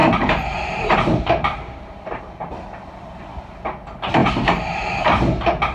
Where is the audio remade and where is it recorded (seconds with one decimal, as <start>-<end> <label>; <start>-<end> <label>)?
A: 0.0-2.2 remade; 2.2-4.2 recorded; 4.2-4.9 remade; 4.9-5.7 recorded